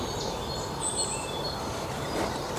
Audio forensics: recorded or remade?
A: remade